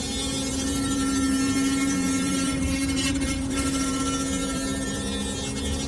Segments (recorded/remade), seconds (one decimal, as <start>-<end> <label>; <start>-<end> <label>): 0.0-0.5 recorded; 0.5-4.0 remade; 4.0-4.4 recorded; 4.4-5.0 remade; 5.0-5.9 recorded